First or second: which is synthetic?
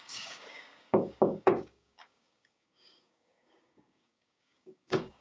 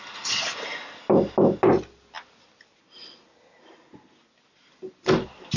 first